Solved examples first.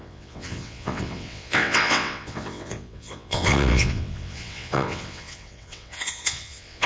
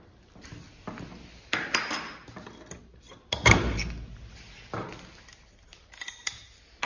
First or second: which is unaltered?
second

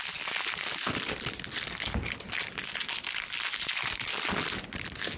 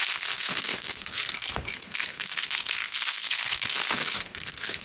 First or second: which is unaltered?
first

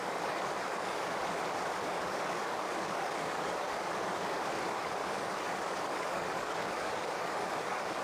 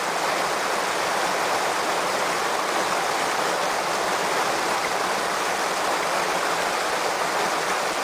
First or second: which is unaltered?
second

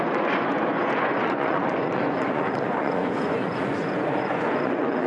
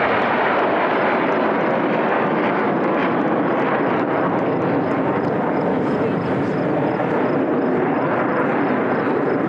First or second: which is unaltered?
second